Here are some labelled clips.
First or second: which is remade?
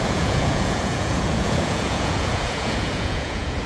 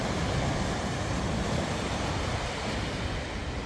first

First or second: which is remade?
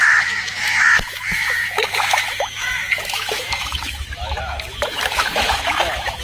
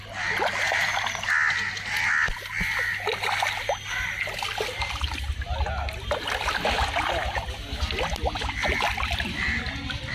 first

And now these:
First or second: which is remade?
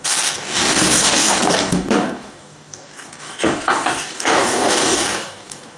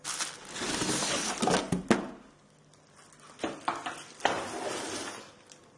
first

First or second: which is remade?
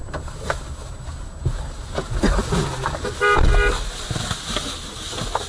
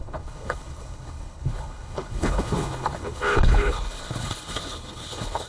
second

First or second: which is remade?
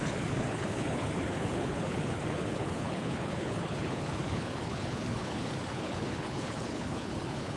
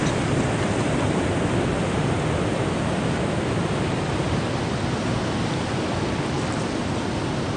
first